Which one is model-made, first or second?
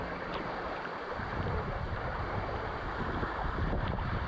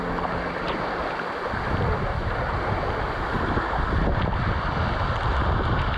first